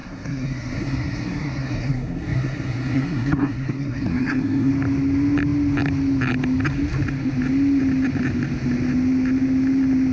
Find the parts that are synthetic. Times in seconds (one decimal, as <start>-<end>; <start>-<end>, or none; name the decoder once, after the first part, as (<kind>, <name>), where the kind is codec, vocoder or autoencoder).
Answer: 0.0-4.7 (codec, SNAC)